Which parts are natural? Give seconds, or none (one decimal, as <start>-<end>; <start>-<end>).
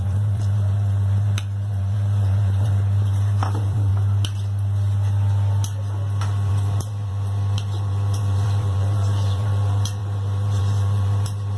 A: 3.9-6.5